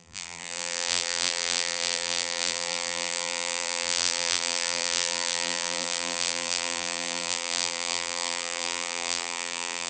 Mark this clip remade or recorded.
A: remade